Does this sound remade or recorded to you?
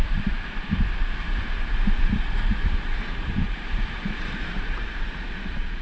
remade